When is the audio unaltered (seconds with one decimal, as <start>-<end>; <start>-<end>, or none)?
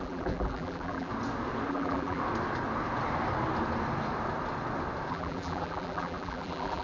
1.1-1.7; 2.2-5.1